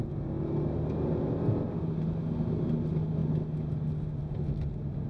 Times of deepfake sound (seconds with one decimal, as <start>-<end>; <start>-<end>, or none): none